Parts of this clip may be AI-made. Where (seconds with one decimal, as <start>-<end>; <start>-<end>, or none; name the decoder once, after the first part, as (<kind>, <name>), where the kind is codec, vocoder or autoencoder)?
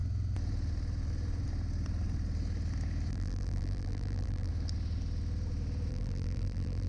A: 3.1-4.5 (vocoder, BigVGAN v2); 5.9-6.9